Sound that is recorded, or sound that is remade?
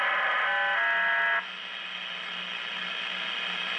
recorded